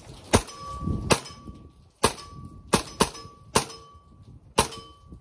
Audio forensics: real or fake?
real